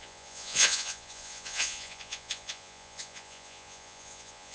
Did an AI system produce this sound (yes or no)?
yes